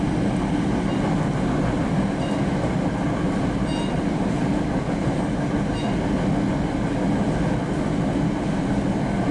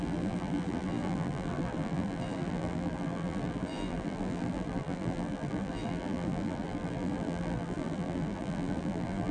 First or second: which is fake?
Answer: second